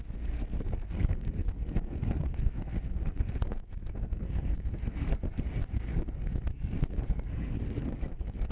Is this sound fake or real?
fake